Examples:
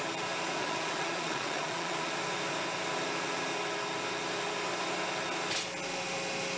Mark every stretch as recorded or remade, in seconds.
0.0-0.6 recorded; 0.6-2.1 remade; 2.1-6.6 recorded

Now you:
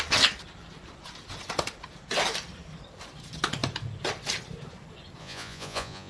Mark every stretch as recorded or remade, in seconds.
0.0-5.2 recorded; 5.2-6.1 remade

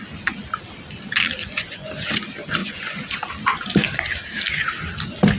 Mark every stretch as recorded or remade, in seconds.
0.0-1.4 recorded; 1.4-1.9 remade; 1.9-2.6 recorded; 2.6-3.3 remade; 3.3-5.4 recorded

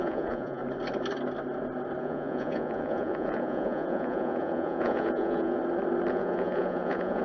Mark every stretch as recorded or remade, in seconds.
0.0-0.6 remade; 0.6-2.0 recorded; 2.0-5.6 remade; 5.6-6.1 recorded; 6.1-7.2 remade